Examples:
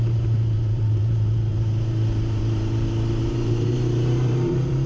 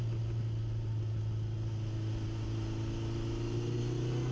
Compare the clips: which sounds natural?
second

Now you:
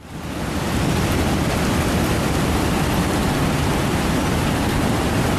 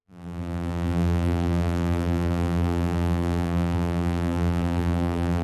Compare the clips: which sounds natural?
first